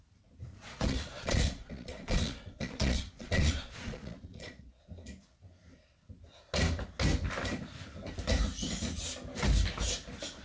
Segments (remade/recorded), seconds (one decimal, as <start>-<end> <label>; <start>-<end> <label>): 0.0-0.5 recorded; 0.5-4.8 remade; 4.8-10.4 recorded